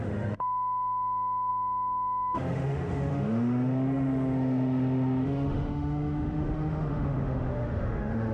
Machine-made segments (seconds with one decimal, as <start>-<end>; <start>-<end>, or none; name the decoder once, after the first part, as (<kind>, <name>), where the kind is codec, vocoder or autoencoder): 0.0-8.3 (autoencoder, DAC-VAE)